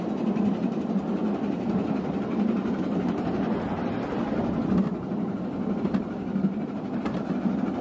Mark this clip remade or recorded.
recorded